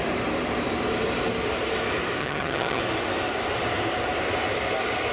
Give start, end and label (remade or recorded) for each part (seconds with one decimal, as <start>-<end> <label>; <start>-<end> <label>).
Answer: 0.0-2.2 recorded; 2.2-2.8 remade; 2.8-5.1 recorded